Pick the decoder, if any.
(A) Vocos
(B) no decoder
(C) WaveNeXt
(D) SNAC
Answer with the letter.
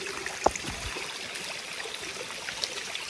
B